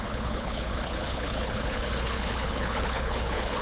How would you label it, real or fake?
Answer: fake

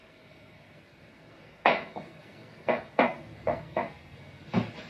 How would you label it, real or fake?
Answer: fake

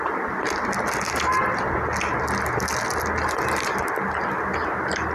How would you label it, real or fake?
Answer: fake